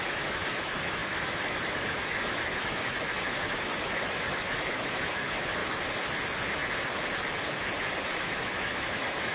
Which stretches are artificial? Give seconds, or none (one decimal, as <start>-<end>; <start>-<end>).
0.0-5.6; 8.2-9.3

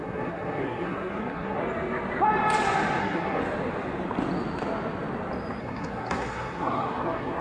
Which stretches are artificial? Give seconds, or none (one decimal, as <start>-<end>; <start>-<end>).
0.0-1.6; 3.0-3.4; 5.6-7.4

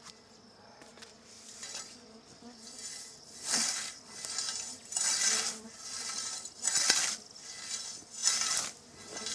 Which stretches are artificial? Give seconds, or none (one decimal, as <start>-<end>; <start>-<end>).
none